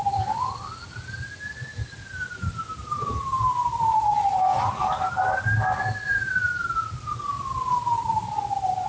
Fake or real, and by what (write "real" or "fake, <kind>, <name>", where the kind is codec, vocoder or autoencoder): real